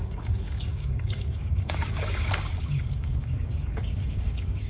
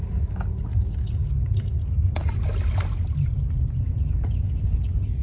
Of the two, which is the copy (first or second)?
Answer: first